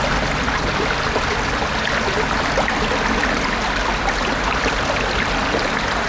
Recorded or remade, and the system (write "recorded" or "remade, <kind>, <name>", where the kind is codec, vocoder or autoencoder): recorded